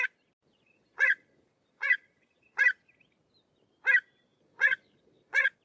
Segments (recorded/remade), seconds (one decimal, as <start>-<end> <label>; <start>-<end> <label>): 0.0-0.5 recorded; 0.5-2.6 remade; 2.6-4.3 recorded; 4.3-5.6 remade